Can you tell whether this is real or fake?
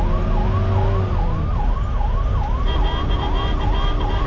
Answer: real